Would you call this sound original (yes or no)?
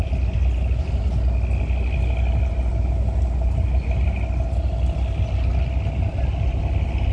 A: yes